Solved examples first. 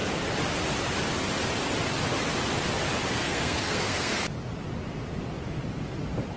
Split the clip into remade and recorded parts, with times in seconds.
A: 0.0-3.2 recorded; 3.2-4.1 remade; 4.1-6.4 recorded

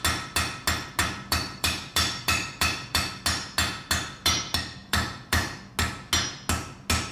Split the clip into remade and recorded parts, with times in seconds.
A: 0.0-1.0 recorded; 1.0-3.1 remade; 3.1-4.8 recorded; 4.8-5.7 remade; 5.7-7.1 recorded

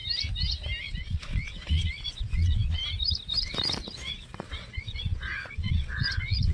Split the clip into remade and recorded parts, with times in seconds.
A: 0.0-0.8 recorded; 0.8-2.8 remade; 2.8-3.4 recorded; 3.4-6.5 remade

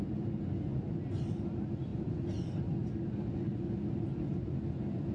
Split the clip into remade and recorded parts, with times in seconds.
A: 0.0-5.1 recorded

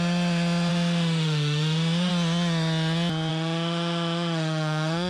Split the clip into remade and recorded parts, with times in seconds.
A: 0.0-0.7 recorded; 0.7-2.1 remade; 2.1-3.3 recorded; 3.3-5.1 remade

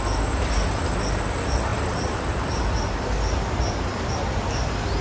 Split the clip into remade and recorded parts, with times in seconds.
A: 0.0-5.0 recorded